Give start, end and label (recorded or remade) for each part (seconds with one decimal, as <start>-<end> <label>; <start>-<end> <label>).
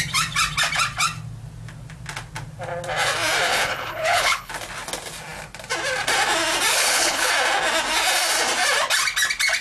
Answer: 0.0-3.5 recorded; 3.5-4.5 remade; 4.5-6.7 recorded; 6.7-7.3 remade; 7.3-9.6 recorded